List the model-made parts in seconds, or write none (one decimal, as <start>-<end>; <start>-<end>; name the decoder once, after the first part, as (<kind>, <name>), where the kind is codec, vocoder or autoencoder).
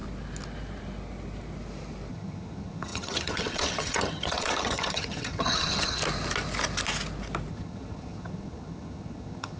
2.1-6.0 (vocoder, HiFi-GAN); 7.5-9.6